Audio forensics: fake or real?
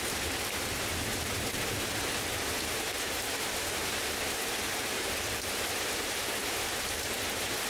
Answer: fake